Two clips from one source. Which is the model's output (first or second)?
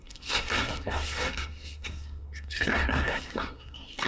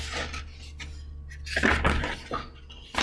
first